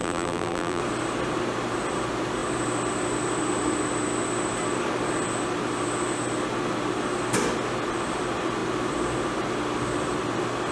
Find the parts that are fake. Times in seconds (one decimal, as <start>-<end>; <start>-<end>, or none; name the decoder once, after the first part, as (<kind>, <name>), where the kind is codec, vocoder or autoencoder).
0.0-0.8 (vocoder, BigVGAN v2)

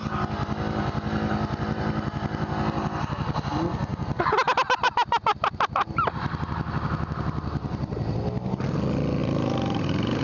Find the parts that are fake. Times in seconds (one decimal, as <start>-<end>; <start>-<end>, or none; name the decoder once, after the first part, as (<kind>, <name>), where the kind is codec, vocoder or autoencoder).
9.2-10.2 (vocoder, BigVGAN v2)

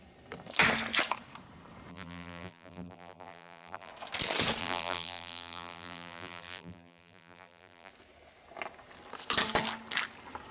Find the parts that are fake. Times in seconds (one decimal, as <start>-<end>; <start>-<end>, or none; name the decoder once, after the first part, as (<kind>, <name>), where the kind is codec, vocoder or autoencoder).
1.9-3.9 (vocoder, BigVGAN v2); 4.6-7.9

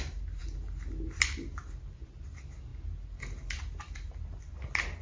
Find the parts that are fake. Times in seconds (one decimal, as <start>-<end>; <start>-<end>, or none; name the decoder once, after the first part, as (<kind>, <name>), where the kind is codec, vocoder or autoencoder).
none

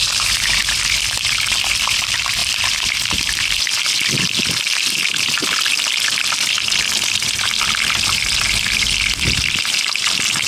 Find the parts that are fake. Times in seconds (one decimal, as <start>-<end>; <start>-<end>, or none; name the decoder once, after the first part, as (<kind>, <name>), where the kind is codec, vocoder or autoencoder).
2.4-3.4 (vocoder, BigVGAN v2)

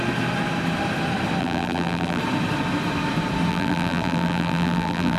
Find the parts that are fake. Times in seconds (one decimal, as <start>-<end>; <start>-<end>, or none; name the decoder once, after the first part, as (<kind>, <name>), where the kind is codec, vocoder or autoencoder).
1.4-2.2 (vocoder, BigVGAN v2); 3.5-5.2

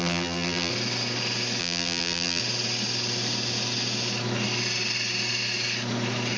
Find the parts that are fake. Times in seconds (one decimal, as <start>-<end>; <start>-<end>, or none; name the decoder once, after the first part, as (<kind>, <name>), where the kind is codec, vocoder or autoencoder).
0.0-0.7 (vocoder, BigVGAN v2); 1.6-2.4

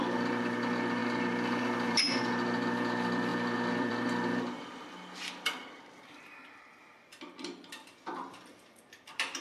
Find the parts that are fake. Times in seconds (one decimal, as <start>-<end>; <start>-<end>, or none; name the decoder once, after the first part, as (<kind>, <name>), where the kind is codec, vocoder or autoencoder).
0.0-1.0 (vocoder, BigVGAN v2); 1.6-9.4